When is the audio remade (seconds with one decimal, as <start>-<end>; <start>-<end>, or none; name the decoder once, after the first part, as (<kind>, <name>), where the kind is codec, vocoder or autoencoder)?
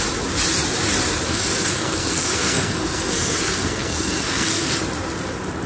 1.3-4.7 (codec, SNAC)